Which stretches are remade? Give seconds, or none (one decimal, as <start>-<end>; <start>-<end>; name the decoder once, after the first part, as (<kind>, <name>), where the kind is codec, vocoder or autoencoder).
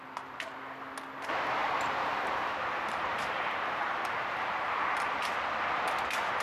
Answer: 1.6-5.3 (vocoder, BigVGAN v2)